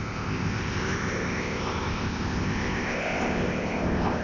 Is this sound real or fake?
fake